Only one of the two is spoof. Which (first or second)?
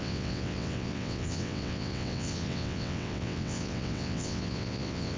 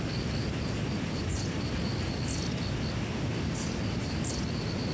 first